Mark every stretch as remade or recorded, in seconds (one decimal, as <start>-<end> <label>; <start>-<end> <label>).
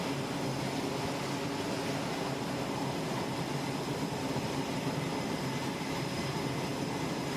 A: 0.0-7.4 recorded